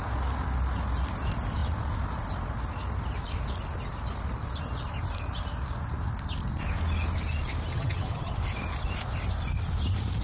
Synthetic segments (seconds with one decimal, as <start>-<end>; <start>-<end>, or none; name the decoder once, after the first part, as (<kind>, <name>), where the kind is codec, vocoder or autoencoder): 7.7-8.3 (vocoder, HiFi-GAN)